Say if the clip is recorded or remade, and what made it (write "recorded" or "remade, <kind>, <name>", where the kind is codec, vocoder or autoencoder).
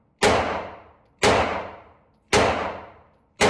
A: recorded